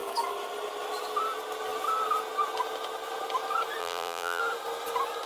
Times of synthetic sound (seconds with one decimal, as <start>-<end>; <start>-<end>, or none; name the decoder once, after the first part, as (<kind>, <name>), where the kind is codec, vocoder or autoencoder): 3.8-4.4 (vocoder, BigVGAN v2)